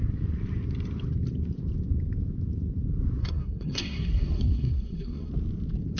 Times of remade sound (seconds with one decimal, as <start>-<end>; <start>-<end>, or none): 3.2-5.3